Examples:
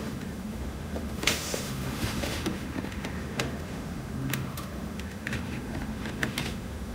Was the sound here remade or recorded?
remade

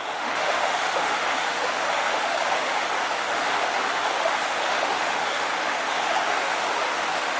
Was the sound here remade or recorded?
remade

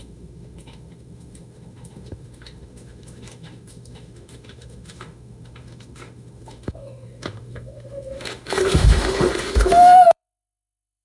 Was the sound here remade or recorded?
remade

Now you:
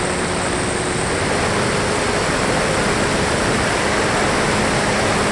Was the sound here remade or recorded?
recorded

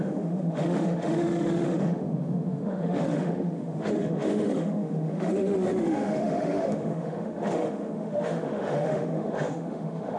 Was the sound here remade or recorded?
remade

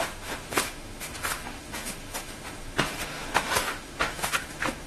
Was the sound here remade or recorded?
remade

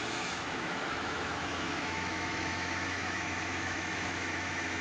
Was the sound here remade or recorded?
remade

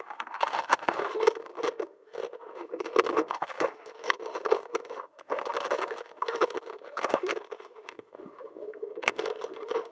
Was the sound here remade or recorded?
remade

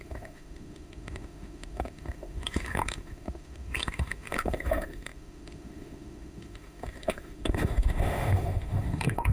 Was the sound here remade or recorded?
remade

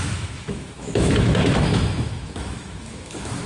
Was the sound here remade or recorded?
remade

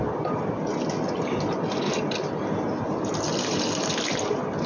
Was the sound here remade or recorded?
recorded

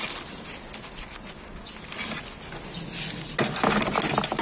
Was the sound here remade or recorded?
recorded